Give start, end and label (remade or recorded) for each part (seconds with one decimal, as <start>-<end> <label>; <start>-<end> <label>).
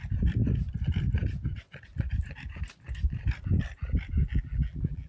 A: 0.0-4.2 recorded; 4.2-5.1 remade